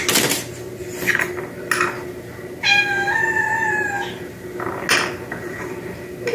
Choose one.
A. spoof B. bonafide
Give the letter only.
B